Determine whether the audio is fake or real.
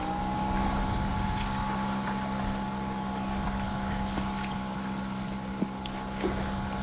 real